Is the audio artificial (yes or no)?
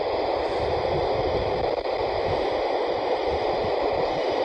no